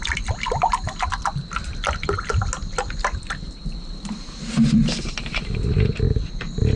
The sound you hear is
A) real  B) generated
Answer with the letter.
A